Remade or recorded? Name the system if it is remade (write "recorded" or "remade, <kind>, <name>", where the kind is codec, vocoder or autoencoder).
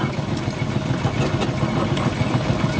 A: recorded